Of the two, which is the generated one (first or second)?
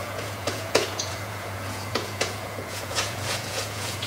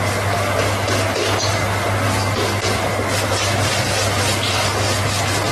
first